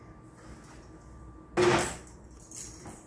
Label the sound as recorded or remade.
recorded